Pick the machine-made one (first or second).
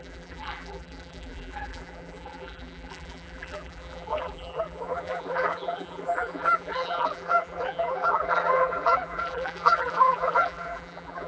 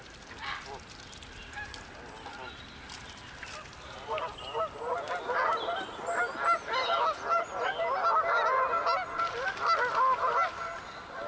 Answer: first